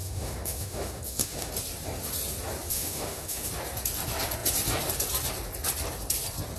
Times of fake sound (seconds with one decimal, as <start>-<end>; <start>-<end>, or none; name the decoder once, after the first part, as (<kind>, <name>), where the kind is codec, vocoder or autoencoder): 0.0-1.5 (autoencoder, DAC-VAE); 2.7-3.5